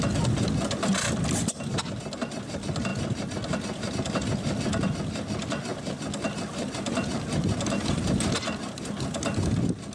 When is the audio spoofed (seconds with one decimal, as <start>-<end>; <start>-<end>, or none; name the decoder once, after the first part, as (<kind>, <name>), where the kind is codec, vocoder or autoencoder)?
none